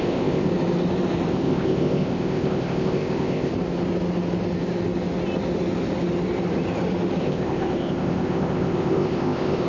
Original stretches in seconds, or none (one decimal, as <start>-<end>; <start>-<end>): 0.5-1.3; 3.5-7.2